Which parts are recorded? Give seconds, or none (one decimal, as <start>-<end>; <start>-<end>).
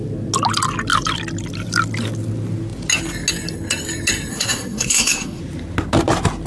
0.0-4.3; 5.4-6.5